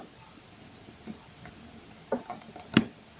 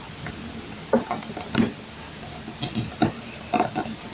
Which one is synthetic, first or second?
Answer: first